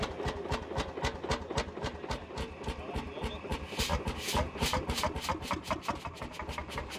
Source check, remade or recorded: recorded